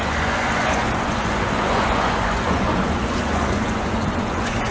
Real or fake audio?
fake